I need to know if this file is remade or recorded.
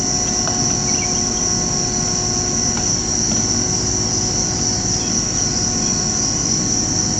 recorded